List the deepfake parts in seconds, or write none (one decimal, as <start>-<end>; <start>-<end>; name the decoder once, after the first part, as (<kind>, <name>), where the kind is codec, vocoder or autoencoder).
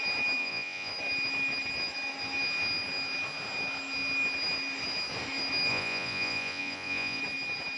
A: 0.4-0.9 (vocoder, Vocos); 5.7-7.2